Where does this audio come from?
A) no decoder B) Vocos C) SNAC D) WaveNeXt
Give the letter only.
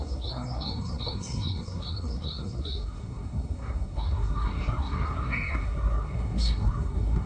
C